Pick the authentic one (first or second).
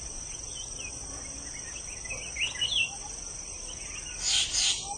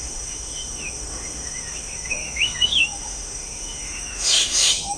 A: first